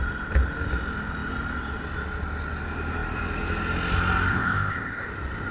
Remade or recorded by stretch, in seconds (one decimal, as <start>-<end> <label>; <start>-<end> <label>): 0.0-4.3 recorded; 4.3-5.1 remade; 5.1-5.5 recorded